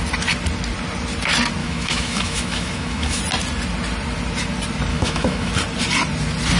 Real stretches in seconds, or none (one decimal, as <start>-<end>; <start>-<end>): 0.0-1.6; 3.2-4.9; 5.5-6.6